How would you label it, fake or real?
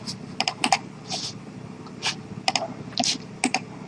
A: real